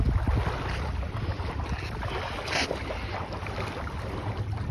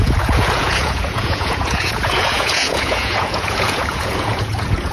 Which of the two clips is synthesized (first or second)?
second